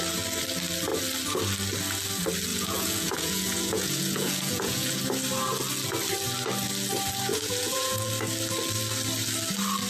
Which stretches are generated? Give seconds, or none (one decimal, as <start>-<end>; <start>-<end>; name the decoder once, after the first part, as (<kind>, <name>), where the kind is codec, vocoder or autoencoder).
2.5-5.0 (vocoder, Vocos); 7.3-8.1